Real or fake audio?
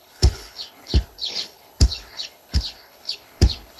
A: fake